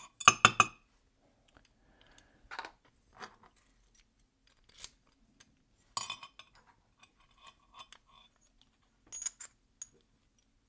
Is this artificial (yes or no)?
no